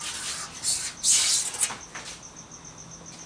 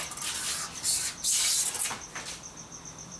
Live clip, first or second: first